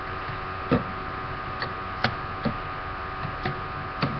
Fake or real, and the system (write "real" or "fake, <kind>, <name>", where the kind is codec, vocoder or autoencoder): real